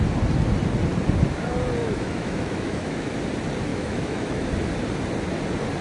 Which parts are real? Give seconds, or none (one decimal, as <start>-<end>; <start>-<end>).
0.0-1.8; 3.2-3.7; 4.5-5.8